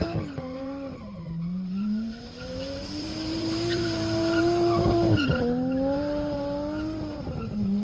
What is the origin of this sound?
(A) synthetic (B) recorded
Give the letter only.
A